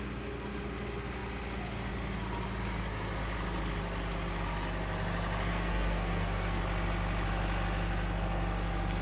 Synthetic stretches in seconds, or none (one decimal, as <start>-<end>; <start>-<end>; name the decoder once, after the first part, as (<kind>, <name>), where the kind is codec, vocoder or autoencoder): 5.5-6.6 (codec, SNAC)